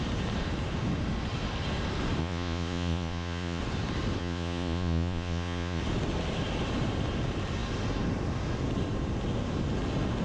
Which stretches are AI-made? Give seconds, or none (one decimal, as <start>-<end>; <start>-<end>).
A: 2.2-3.6; 4.2-5.8